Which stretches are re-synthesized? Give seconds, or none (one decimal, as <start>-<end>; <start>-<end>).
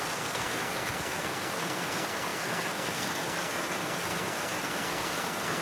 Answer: 0.0-5.6